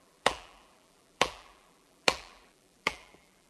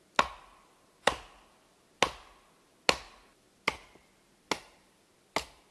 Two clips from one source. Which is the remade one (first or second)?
first